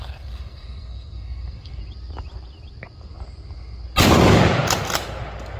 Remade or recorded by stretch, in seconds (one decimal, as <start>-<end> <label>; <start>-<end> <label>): 0.0-1.8 remade; 1.8-5.6 recorded